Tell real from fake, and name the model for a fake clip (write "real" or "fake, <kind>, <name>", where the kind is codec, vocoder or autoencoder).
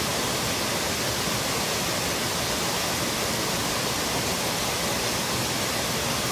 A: real